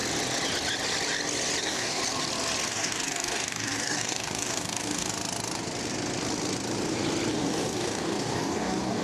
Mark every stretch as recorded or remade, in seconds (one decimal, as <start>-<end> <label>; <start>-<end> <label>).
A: 0.0-1.6 recorded; 1.6-2.0 remade; 2.0-2.7 recorded; 2.7-5.1 remade; 5.1-7.3 recorded; 7.3-9.0 remade